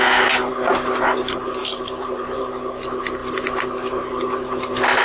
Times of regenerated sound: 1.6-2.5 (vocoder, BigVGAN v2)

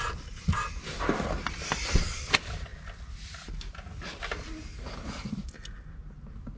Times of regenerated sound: none